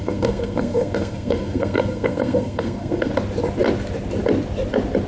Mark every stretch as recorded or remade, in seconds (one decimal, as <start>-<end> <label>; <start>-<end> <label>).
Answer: 0.0-3.1 remade; 3.1-5.1 recorded